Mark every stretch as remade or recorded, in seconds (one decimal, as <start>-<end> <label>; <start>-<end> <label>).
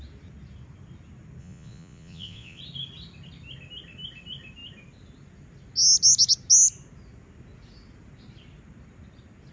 0.0-1.4 recorded; 1.4-2.6 remade; 2.6-9.5 recorded